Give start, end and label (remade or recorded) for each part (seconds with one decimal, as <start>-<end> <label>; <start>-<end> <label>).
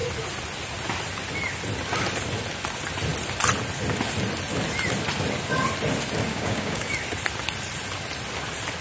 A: 0.0-6.3 recorded; 6.3-6.9 remade; 6.9-8.8 recorded